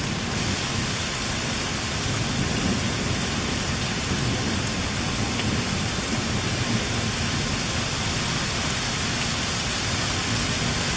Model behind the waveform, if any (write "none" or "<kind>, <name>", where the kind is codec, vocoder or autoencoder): none